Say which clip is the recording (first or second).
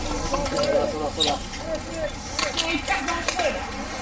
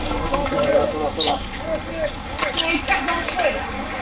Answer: first